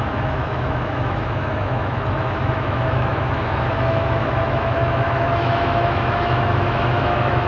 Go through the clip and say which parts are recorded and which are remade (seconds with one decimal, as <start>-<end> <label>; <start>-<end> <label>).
0.0-7.5 remade